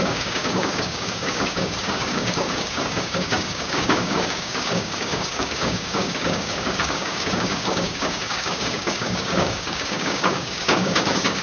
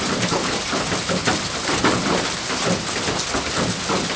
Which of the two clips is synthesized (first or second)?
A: first